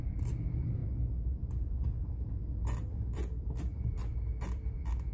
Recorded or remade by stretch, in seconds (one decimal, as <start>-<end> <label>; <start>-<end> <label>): 0.0-0.8 remade; 0.8-3.6 recorded; 3.6-4.0 remade; 4.0-5.1 recorded